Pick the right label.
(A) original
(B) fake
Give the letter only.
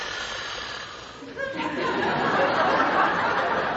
A